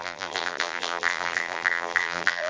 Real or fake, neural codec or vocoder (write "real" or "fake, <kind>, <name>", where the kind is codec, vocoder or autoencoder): fake, vocoder, BigVGAN v2